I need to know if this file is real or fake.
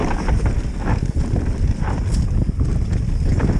real